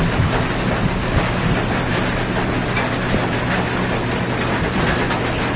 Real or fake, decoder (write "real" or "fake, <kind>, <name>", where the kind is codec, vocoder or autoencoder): real